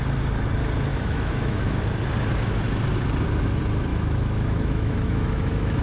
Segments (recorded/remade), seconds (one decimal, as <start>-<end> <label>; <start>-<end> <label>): 0.0-0.9 recorded; 0.9-1.8 remade; 1.8-3.9 recorded; 3.9-5.8 remade